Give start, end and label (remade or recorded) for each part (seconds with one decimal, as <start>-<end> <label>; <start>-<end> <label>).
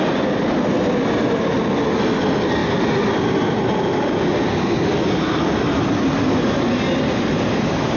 0.0-8.0 recorded